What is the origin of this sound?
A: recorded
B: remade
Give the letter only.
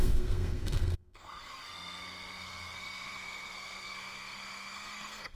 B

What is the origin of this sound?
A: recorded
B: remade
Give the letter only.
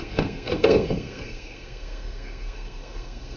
B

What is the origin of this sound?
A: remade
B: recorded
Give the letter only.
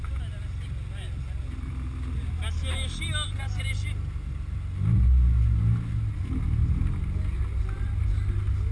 B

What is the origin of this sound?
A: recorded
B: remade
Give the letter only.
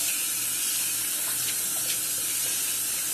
A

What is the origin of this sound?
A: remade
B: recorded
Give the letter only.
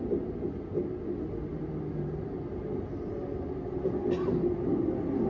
B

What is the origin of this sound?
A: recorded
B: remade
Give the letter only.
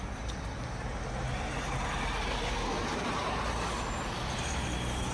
A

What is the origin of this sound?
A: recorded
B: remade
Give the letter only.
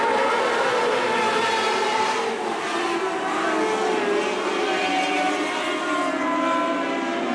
A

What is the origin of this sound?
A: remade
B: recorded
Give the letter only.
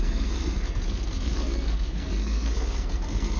A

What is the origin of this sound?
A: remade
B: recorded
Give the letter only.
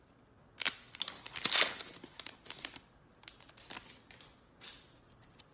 B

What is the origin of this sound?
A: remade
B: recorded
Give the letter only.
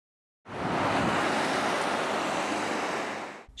B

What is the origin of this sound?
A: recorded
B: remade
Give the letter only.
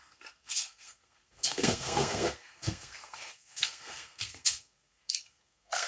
B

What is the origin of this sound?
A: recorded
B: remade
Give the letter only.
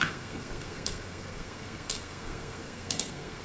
B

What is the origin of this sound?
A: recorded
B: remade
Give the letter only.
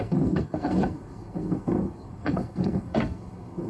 B